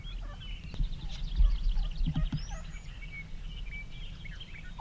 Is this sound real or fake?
real